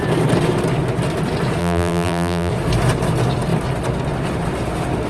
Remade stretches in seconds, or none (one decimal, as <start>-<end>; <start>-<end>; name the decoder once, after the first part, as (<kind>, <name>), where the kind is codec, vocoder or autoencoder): 1.6-2.5 (vocoder, BigVGAN v2)